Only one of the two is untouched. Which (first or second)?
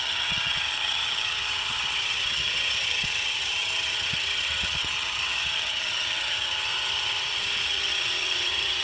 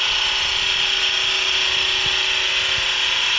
second